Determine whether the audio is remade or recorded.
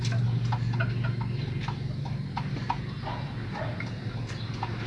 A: recorded